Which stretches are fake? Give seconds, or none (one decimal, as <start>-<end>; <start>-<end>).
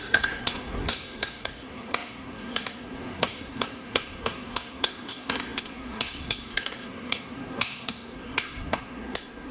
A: 0.0-9.5